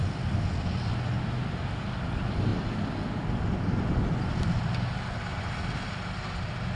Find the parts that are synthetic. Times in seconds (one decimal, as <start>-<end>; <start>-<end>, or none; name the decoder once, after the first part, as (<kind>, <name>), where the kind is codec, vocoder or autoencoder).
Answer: none